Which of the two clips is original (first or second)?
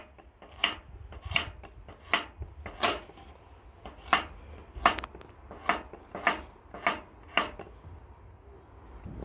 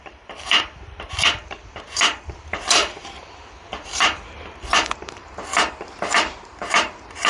first